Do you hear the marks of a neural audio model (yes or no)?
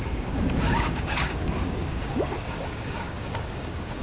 yes